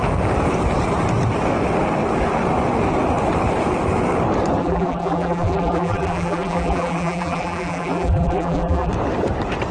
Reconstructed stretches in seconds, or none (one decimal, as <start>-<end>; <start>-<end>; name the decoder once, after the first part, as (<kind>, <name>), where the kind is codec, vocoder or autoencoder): 4.6-8.9 (vocoder, BigVGAN v2)